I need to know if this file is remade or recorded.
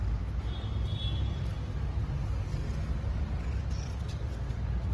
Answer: recorded